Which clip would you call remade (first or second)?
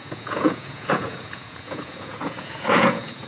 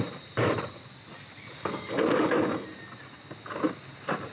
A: first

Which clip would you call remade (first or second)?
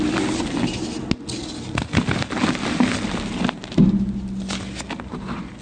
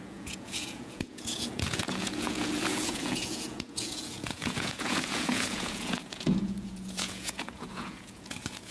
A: second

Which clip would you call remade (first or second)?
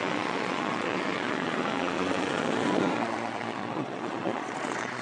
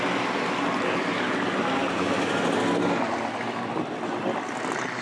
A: first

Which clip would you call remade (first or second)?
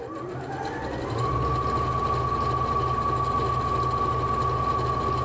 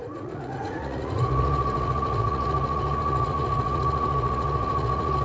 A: second